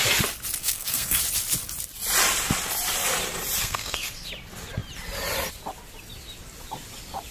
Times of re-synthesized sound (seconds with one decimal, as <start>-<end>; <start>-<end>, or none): 0.6-1.2; 3.6-4.3